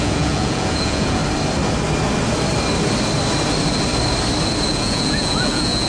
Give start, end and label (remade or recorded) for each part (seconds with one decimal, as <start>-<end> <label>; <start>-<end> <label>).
0.0-1.2 remade; 1.2-4.7 recorded; 4.7-5.9 remade